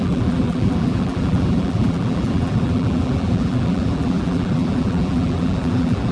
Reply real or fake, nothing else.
fake